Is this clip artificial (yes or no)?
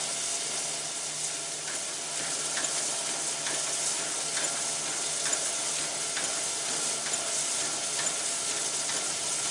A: no